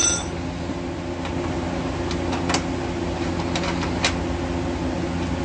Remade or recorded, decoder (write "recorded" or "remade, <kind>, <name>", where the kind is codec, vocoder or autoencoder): recorded